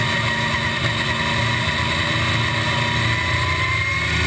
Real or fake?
real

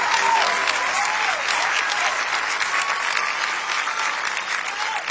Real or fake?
real